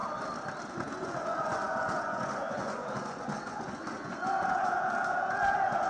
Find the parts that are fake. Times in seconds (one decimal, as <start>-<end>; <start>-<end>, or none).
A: 0.7-5.9